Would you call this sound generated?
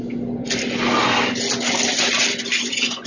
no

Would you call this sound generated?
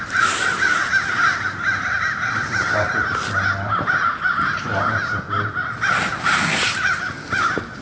no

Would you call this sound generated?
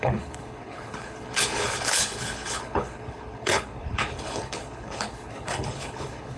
yes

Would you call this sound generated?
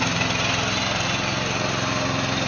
no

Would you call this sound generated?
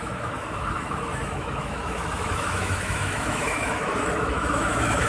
yes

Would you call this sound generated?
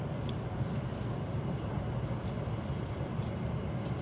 no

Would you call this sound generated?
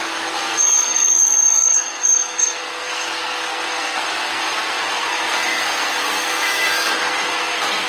yes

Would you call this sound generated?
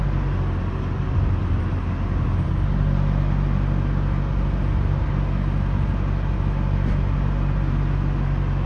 no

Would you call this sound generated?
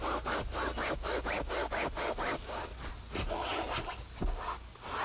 no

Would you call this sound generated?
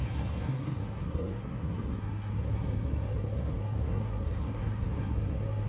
yes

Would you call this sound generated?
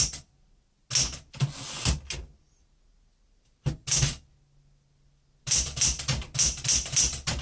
no